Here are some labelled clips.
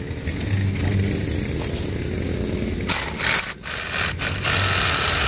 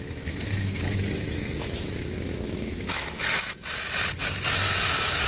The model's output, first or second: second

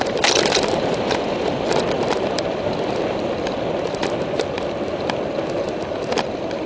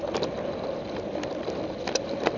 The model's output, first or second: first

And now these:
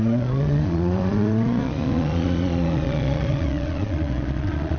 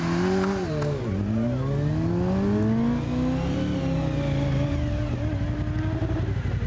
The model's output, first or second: first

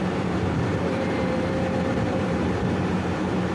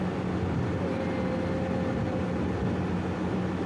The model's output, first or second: first